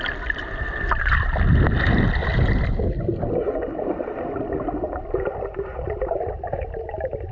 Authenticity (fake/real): real